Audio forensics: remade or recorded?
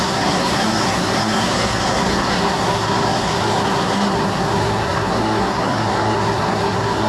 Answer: remade